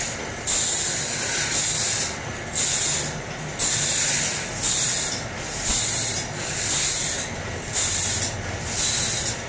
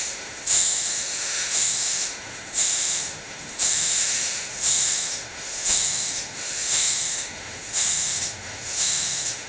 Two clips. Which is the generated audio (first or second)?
second